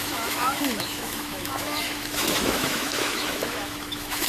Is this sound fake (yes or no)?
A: yes